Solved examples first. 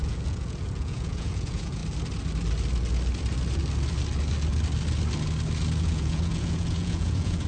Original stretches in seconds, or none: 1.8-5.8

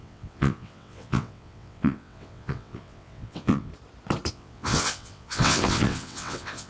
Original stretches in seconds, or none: 3.7-4.3

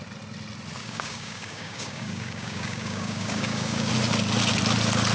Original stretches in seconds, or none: 0.0-0.8; 3.9-5.1

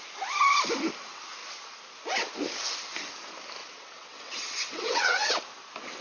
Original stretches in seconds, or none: 0.0-3.6; 5.4-6.0

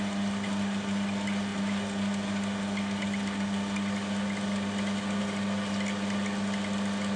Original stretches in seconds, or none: 0.0-7.2

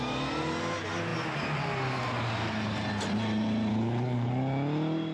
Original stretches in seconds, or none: 0.0-3.7; 4.3-5.1